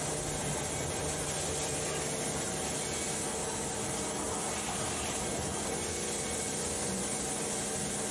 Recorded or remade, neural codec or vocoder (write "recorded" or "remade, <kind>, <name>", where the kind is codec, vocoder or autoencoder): recorded